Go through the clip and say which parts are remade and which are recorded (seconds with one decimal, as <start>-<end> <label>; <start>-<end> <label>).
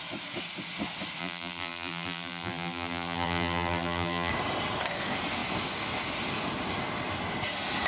0.0-1.2 recorded; 1.2-4.3 remade; 4.3-7.9 recorded